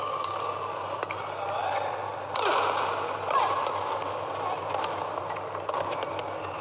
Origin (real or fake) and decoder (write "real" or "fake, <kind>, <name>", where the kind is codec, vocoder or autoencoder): real